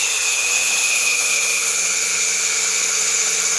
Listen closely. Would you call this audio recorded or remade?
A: remade